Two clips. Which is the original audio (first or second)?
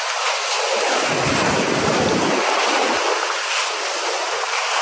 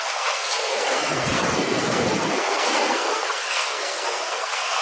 first